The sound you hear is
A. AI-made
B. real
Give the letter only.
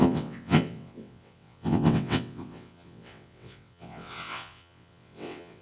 A